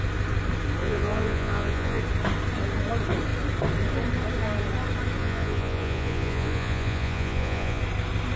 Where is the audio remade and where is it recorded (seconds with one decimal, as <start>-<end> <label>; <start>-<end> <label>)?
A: 0.0-0.8 recorded; 0.8-2.0 remade; 2.0-5.2 recorded; 5.2-7.8 remade; 7.8-8.4 recorded

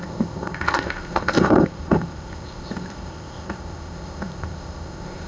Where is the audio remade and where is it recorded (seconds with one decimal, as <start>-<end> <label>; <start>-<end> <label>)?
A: 0.0-5.3 remade

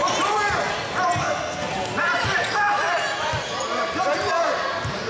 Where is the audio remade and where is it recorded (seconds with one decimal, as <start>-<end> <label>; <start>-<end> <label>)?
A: 0.0-1.2 recorded; 1.2-1.7 remade; 1.7-5.1 recorded

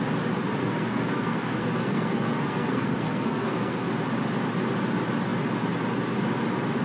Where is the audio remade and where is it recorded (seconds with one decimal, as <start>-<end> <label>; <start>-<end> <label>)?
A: 0.0-0.6 recorded; 0.6-3.9 remade; 3.9-6.8 recorded

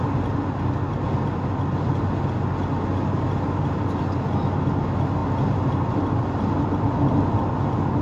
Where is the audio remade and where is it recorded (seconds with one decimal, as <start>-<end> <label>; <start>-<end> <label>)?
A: 0.0-8.0 recorded

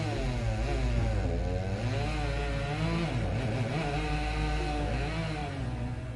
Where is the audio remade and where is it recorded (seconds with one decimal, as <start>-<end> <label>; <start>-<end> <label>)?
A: 0.0-5.4 recorded; 5.4-6.2 remade

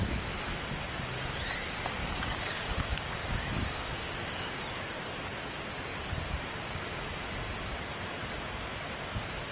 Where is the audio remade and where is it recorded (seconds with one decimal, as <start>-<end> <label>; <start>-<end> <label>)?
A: 0.0-2.0 recorded; 2.0-4.4 remade; 4.4-9.5 recorded

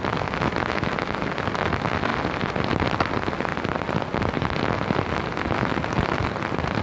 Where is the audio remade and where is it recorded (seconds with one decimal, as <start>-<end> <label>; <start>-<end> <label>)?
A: 0.0-6.8 recorded